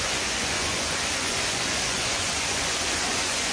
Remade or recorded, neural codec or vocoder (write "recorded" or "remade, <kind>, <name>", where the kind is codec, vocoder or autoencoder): remade, vocoder, Vocos